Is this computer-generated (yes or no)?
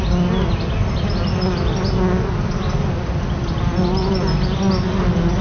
no